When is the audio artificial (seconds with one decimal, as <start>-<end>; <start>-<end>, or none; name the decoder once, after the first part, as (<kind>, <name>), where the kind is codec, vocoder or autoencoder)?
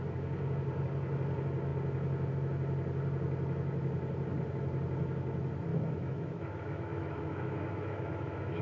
5.7-8.6 (autoencoder, DAC-VAE)